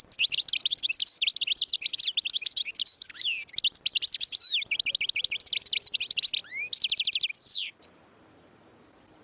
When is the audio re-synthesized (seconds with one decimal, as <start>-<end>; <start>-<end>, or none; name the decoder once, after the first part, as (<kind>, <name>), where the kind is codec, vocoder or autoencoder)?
0.0-9.2 (vocoder, BigVGAN v2)